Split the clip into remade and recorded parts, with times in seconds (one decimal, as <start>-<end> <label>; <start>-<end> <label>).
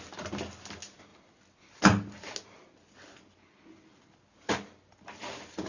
0.0-5.7 recorded